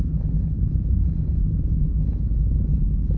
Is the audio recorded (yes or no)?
no